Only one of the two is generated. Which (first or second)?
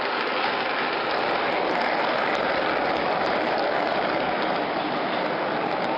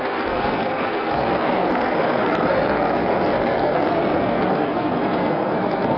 second